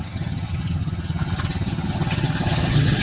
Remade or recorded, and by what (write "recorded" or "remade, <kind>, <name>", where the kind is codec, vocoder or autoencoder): remade, vocoder, HiFi-GAN